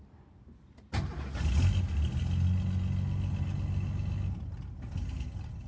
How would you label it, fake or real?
real